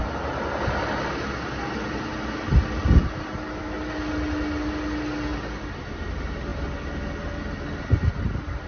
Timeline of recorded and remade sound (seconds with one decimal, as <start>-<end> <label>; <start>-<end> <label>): 0.0-8.7 recorded